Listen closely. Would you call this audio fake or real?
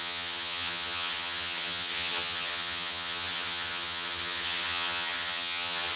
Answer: fake